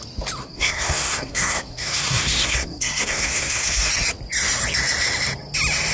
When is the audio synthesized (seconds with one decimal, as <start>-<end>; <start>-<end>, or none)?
0.4-3.9